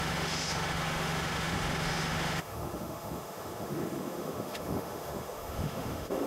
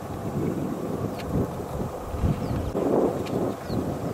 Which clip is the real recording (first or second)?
second